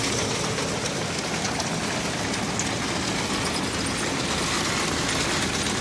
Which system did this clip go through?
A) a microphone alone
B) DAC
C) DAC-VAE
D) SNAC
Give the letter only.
A